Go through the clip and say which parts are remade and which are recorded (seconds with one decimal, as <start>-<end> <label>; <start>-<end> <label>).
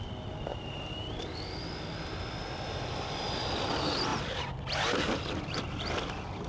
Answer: 0.0-0.5 recorded; 0.5-1.4 remade; 1.4-6.5 recorded